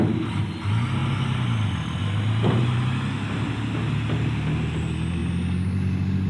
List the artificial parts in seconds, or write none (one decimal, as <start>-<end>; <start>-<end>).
none